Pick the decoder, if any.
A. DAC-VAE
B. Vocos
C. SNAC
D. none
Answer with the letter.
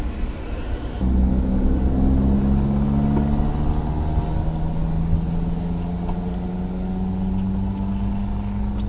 D